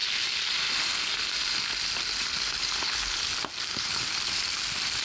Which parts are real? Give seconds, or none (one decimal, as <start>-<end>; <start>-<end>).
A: 0.0-2.6; 3.3-3.7; 4.2-5.0